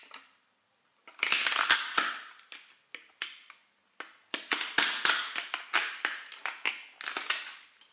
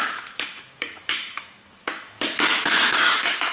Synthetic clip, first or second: second